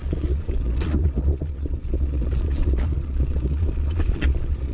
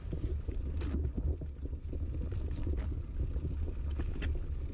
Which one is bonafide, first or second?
second